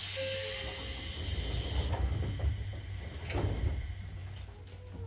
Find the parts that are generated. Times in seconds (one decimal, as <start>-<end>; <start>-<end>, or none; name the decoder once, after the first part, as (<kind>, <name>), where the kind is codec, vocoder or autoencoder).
none